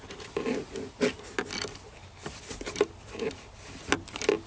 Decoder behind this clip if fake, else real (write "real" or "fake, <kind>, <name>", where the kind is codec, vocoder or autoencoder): real